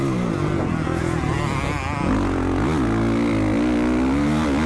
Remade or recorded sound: recorded